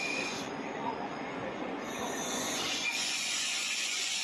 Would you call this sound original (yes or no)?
no